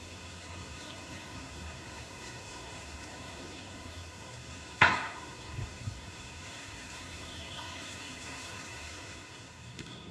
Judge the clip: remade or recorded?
remade